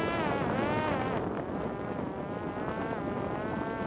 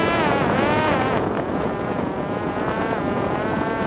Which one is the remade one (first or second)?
second